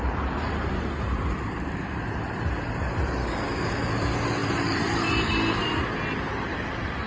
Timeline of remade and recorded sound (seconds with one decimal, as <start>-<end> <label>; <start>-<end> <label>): 0.0-3.2 recorded; 3.2-3.9 remade; 3.9-7.1 recorded